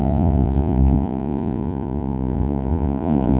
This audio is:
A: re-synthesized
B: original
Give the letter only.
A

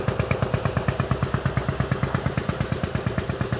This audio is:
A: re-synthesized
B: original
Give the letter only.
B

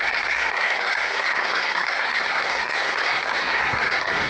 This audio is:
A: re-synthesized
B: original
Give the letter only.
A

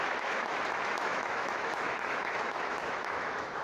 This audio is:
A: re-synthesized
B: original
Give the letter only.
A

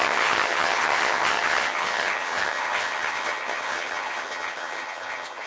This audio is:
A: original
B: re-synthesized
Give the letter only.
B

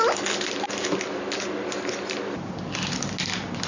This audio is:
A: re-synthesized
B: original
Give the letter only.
B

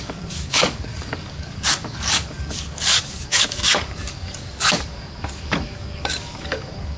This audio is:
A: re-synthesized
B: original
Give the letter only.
A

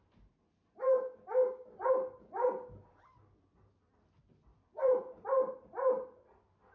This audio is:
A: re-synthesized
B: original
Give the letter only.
B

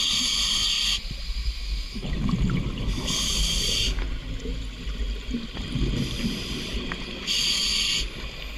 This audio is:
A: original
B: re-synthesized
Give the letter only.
A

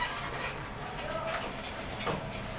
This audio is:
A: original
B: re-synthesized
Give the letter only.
A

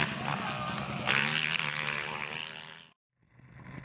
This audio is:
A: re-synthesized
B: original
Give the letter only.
B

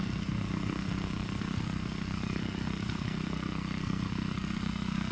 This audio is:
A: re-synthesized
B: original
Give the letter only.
A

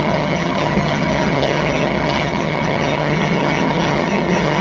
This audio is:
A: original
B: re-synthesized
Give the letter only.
B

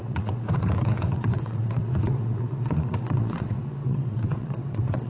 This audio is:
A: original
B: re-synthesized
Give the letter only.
B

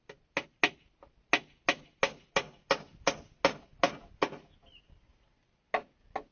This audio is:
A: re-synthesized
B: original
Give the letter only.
B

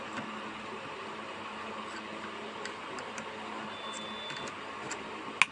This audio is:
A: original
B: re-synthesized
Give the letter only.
A